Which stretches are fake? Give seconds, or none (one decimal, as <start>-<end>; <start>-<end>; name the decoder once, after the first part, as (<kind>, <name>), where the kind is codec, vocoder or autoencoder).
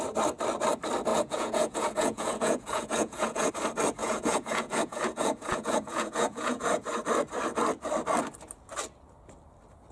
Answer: 1.1-3.5 (vocoder, Vocos); 4.0-6.9